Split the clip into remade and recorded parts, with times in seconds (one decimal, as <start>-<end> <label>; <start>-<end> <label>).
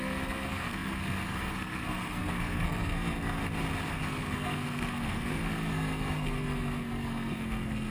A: 0.0-3.4 remade; 3.4-3.9 recorded; 3.9-7.9 remade